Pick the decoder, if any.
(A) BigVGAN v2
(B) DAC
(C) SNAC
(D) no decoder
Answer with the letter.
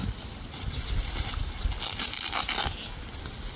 D